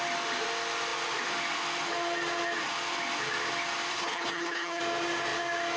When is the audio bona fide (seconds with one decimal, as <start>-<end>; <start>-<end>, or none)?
0.0-3.9; 4.8-5.8